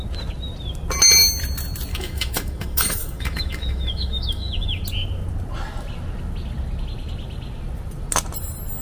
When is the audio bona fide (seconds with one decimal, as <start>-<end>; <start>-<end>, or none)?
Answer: 0.0-1.9; 4.8-8.8